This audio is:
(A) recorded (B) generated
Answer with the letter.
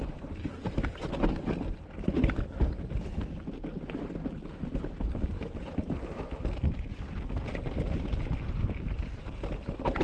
A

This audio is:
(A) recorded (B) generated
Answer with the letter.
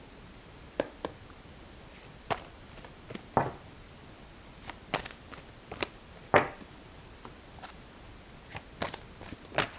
A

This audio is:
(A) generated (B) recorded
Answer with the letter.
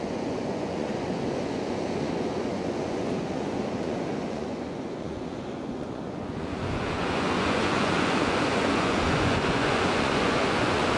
A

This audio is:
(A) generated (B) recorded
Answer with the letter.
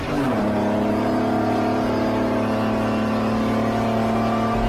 B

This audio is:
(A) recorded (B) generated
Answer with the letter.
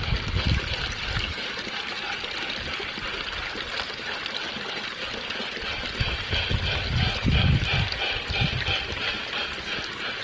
A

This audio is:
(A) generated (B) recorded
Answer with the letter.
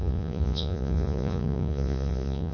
A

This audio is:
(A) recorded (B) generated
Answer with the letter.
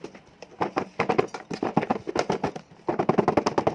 A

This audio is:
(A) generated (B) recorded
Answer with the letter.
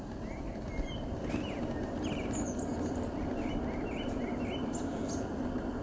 B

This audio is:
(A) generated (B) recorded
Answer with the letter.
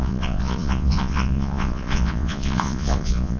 A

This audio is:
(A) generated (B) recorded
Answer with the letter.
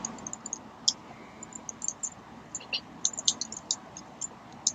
B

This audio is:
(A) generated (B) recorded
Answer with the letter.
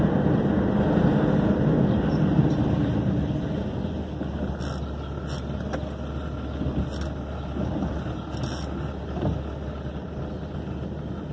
B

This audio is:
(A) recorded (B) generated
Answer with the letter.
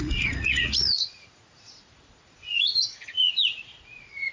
B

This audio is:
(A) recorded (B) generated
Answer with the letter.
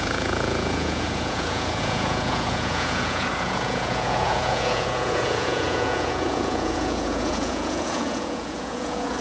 B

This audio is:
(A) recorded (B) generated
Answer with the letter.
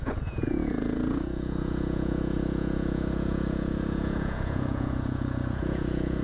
B